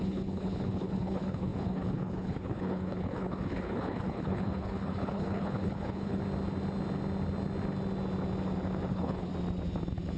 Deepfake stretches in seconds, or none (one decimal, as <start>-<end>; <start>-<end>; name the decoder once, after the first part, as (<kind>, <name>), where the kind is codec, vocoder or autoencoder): 0.0-6.2 (codec, HILCodec); 8.9-9.3